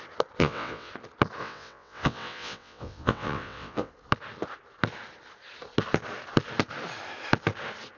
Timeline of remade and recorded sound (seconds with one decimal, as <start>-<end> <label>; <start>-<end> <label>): 0.0-0.4 recorded; 0.4-0.9 remade; 0.9-1.4 recorded; 1.4-3.9 remade; 3.9-8.0 recorded